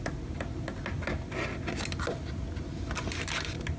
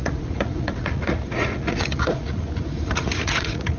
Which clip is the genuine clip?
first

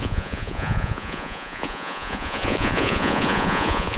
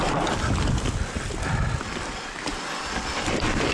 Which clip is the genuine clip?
second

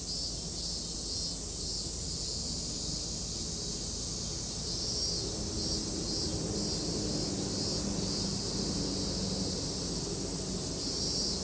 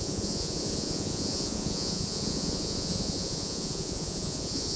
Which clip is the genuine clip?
first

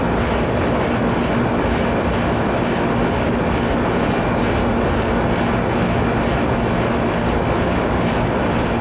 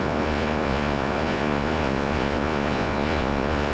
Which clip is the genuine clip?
first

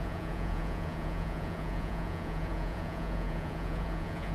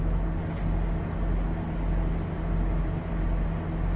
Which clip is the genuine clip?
second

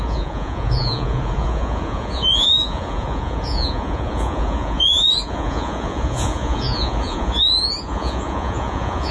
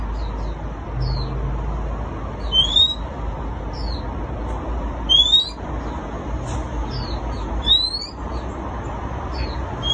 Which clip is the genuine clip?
second